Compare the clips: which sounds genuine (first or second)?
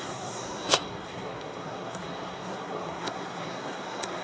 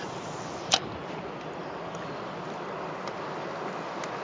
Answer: second